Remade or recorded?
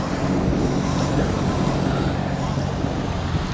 recorded